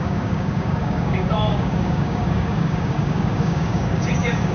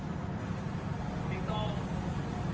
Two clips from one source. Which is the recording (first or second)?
second